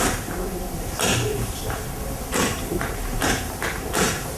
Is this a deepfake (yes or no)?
yes